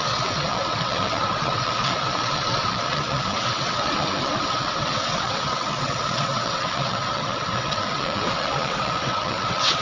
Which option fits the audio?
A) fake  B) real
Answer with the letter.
A